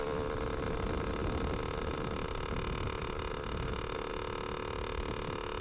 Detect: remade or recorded recorded